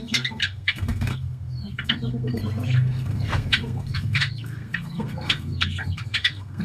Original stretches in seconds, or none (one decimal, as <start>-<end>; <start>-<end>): none